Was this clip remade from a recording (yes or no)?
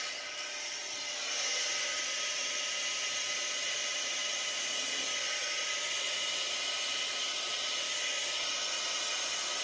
no